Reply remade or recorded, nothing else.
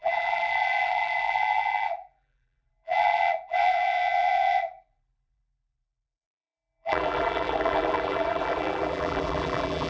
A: remade